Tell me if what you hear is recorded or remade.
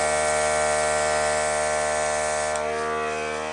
remade